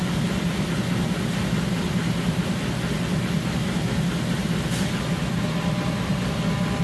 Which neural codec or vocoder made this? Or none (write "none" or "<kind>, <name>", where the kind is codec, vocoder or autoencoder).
none